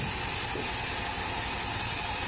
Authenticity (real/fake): real